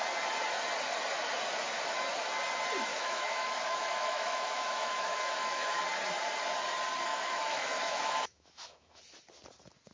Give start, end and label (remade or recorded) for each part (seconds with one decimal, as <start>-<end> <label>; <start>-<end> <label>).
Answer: 0.0-2.9 recorded; 2.9-5.8 remade; 5.8-7.1 recorded; 7.1-9.0 remade; 9.0-9.9 recorded